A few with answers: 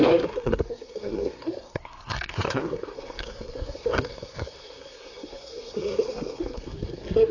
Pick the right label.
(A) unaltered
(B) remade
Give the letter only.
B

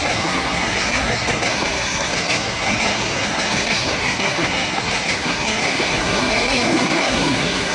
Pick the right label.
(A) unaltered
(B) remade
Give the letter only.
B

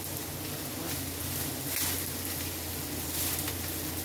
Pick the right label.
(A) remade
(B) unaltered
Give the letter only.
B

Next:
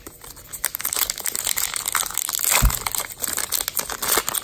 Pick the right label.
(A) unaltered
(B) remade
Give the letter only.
A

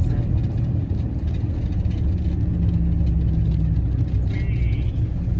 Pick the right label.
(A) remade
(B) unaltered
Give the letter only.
B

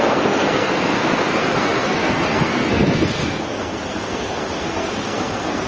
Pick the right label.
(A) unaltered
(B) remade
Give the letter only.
B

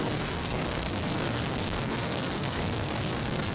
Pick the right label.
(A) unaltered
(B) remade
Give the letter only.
B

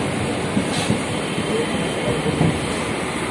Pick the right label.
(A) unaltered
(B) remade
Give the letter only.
A